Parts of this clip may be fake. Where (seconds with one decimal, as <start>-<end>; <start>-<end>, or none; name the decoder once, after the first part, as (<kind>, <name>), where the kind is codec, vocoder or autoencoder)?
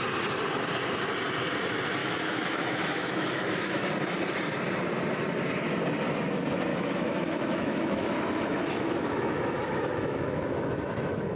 2.0-3.9 (autoencoder, DAC-VAE); 6.7-11.4